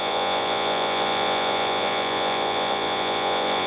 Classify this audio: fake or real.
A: fake